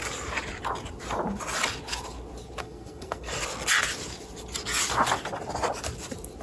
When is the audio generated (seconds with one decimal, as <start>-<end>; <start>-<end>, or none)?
2.6-3.4